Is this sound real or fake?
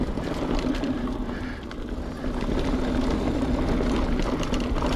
real